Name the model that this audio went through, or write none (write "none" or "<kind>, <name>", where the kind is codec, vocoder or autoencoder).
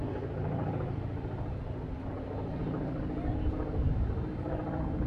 none